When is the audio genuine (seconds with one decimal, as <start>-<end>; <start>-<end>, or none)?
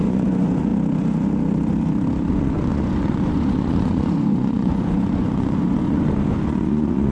0.7-2.3